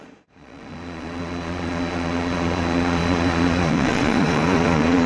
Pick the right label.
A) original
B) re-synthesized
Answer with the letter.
B